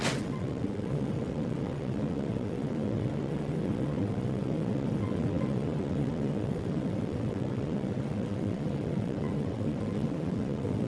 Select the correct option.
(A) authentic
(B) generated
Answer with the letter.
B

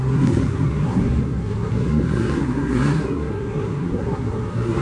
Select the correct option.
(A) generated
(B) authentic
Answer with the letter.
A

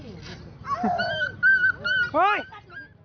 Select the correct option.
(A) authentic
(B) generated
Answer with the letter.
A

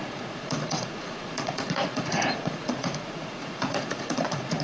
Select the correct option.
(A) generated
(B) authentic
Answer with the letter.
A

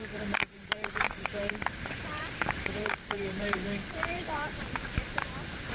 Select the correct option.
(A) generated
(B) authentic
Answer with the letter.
A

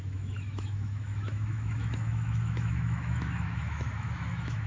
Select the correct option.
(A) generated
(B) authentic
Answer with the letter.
A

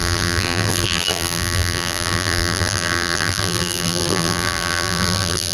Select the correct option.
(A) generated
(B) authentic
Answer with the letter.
A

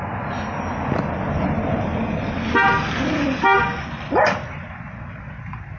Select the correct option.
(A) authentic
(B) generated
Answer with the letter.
A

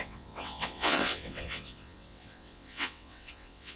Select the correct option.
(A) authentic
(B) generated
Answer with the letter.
B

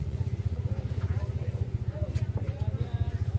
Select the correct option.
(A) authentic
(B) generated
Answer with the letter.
B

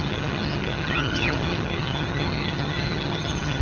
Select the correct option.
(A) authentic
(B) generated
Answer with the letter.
B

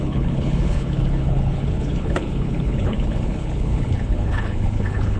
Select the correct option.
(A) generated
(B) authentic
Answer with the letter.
A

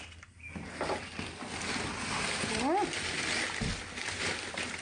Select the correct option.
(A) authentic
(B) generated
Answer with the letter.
A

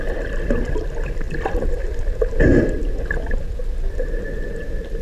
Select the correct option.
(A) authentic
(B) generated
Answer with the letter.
A